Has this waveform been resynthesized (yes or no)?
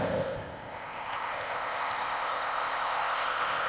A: yes